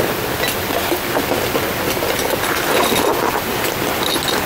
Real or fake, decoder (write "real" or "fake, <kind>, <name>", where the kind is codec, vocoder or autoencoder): real